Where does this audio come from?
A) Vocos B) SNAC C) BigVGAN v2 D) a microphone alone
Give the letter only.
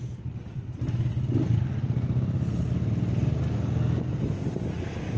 D